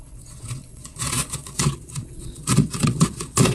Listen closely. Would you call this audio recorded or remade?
remade